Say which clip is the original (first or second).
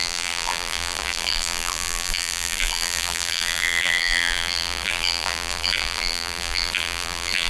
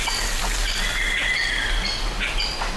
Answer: second